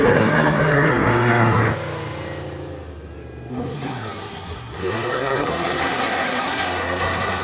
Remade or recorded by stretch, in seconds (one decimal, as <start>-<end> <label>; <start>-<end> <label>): 0.0-1.6 remade; 1.6-3.5 recorded; 3.5-7.4 remade